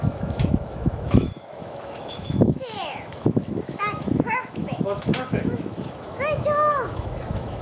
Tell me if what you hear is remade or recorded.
remade